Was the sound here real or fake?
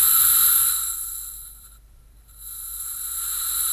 fake